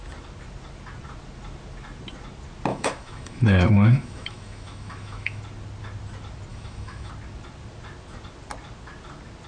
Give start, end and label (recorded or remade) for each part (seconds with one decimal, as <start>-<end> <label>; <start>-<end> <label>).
0.0-2.7 recorded; 2.7-5.4 remade; 5.4-6.5 recorded; 6.5-7.1 remade; 7.1-9.5 recorded